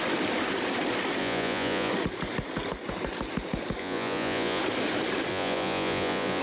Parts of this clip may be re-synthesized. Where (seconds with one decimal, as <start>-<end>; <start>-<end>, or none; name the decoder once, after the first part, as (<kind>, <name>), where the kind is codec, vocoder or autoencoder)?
1.2-1.9 (vocoder, Vocos); 3.8-4.6; 5.3-6.4